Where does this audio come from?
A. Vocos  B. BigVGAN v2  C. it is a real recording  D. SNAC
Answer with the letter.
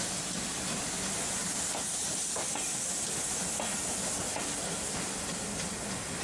C